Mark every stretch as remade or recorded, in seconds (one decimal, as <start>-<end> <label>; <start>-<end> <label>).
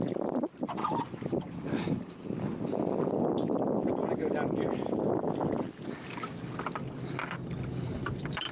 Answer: 0.0-8.5 recorded